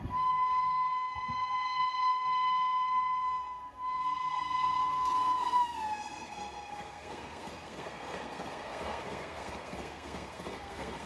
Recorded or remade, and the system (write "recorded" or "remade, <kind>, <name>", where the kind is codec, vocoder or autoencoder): remade, codec, SNAC